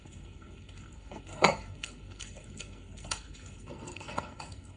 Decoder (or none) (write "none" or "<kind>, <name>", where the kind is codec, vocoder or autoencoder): codec, SNAC